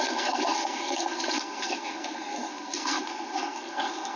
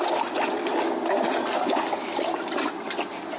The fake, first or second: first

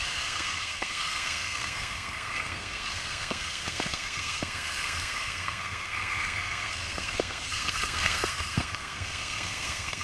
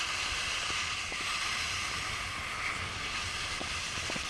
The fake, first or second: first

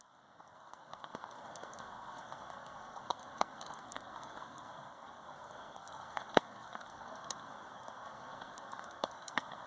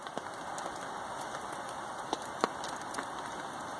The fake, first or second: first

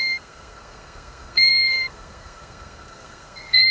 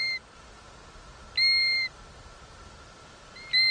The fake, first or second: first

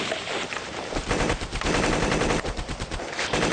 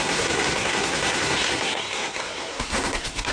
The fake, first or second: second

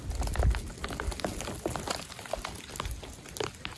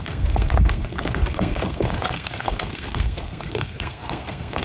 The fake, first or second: second